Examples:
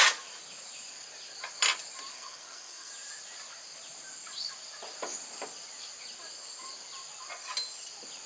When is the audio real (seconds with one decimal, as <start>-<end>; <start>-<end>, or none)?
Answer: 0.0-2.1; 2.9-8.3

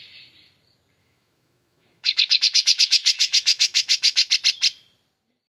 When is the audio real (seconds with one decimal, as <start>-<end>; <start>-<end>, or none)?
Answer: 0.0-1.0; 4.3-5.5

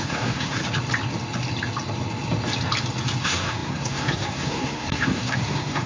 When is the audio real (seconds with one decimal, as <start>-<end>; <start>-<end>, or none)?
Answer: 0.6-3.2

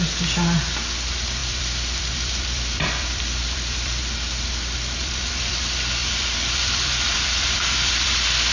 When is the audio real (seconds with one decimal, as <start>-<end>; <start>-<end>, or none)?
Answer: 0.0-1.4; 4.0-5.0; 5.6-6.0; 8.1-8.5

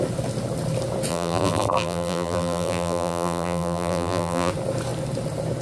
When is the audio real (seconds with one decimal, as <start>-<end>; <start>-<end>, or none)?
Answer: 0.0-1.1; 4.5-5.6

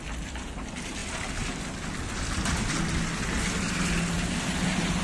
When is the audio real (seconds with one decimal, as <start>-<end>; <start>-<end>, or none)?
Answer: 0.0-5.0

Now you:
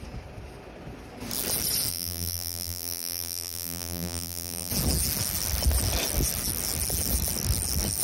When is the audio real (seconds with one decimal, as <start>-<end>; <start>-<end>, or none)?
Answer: 0.0-1.9; 4.7-8.0

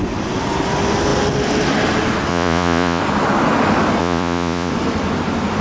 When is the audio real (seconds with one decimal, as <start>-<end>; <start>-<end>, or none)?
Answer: 0.0-2.3; 3.0-4.0; 4.7-5.6